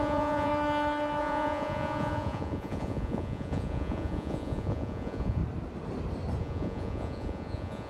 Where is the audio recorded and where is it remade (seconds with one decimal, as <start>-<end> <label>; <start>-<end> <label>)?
0.0-0.5 remade; 0.5-1.2 recorded; 1.2-5.4 remade; 5.4-6.4 recorded; 6.4-7.9 remade